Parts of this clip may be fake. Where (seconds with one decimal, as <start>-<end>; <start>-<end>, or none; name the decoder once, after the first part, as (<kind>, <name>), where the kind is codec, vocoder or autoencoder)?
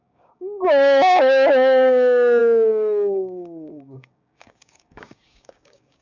0.0-6.0 (codec, DAC)